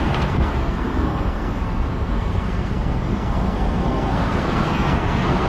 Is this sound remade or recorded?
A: remade